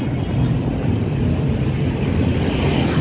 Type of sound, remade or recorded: remade